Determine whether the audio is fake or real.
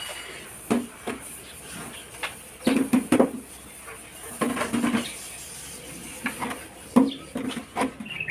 real